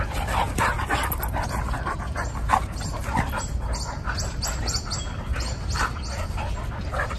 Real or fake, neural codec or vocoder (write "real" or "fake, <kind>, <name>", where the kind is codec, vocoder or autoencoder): real